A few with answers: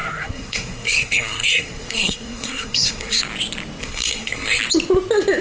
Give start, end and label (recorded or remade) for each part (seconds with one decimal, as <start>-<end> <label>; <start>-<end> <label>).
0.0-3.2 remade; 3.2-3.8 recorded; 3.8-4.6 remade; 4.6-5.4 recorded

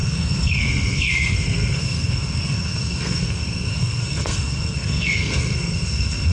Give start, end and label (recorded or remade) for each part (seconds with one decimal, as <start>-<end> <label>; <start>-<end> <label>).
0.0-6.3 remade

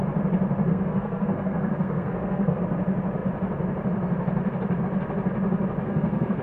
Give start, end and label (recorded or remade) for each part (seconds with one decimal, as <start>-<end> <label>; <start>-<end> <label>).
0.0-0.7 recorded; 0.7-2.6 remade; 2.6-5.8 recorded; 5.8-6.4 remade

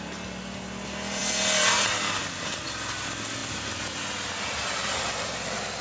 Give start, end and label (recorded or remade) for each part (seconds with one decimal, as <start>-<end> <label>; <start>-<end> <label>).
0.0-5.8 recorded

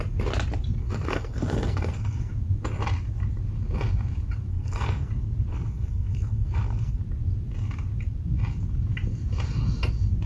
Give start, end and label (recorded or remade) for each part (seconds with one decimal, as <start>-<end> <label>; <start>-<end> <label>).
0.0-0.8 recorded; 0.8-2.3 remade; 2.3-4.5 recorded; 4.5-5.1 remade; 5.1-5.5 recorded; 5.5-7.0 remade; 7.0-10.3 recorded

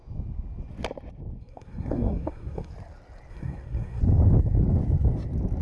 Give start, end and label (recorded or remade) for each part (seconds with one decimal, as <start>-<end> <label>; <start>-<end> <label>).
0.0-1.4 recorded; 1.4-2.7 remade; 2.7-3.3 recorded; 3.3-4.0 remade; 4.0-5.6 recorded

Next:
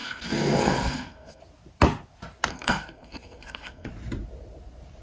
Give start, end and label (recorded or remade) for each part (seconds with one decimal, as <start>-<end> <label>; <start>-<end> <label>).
0.0-1.4 remade; 1.4-2.5 recorded; 2.5-3.9 remade; 3.9-5.0 recorded

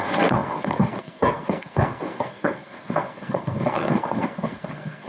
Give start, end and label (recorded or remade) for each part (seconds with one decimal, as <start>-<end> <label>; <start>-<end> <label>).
0.0-5.1 remade